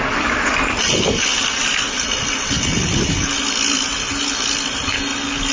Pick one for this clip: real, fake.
real